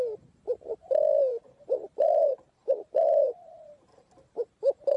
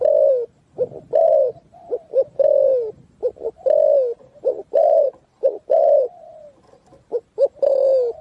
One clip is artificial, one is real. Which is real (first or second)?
second